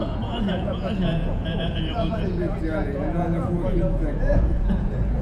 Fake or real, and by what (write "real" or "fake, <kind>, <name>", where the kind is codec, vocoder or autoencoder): fake, vocoder, Vocos